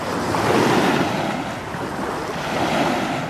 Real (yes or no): yes